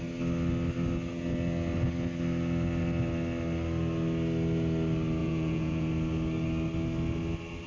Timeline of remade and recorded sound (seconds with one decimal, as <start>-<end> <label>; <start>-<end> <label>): 0.0-5.2 recorded; 5.2-5.9 remade; 5.9-7.7 recorded